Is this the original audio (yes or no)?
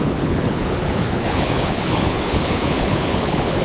no